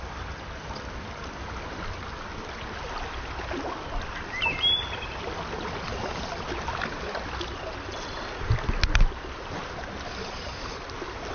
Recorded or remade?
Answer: recorded